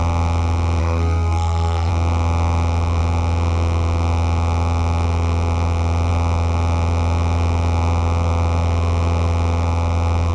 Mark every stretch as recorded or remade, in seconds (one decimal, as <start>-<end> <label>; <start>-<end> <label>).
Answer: 0.0-0.8 recorded; 0.8-1.9 remade; 1.9-10.3 recorded